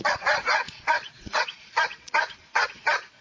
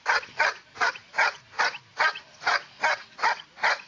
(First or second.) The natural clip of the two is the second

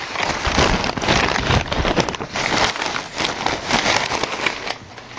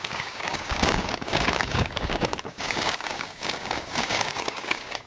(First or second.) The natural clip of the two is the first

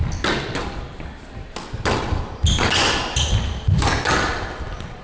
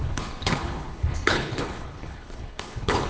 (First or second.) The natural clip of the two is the first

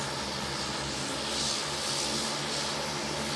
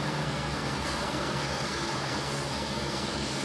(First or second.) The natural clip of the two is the first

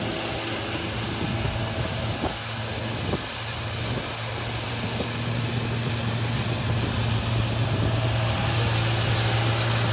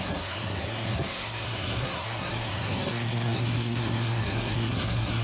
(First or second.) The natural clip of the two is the first